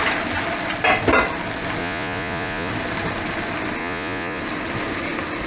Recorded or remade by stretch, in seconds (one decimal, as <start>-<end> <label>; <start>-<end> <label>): 0.0-1.8 recorded; 1.8-2.7 remade; 2.7-3.8 recorded; 3.8-4.4 remade; 4.4-5.5 recorded